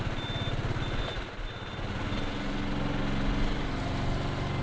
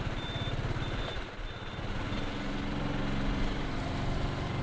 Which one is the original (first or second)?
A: first